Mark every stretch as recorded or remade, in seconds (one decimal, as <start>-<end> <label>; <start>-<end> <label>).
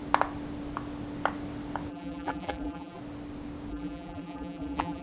0.0-1.9 recorded; 1.9-3.0 remade; 3.0-3.7 recorded; 3.7-5.0 remade